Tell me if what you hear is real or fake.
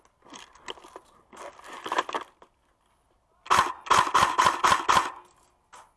real